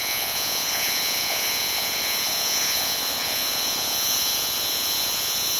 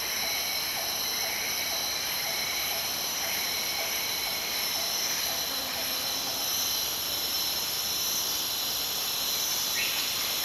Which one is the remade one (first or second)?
first